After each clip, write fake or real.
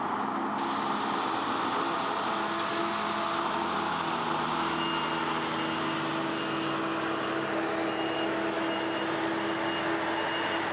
real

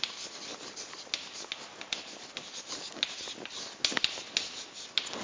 real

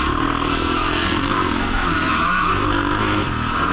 fake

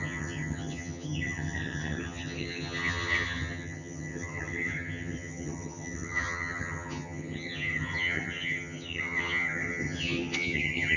fake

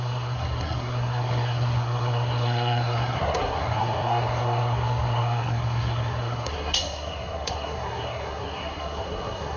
fake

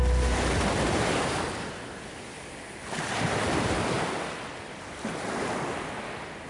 real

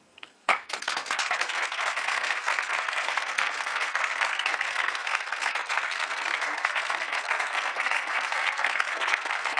fake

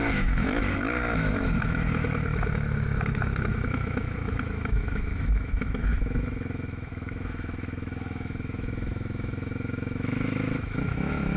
fake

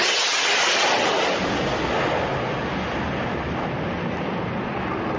real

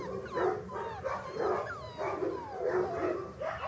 real